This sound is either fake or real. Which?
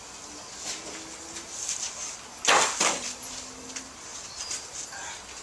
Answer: real